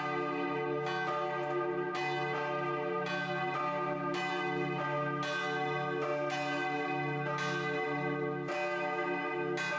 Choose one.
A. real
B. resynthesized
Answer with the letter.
A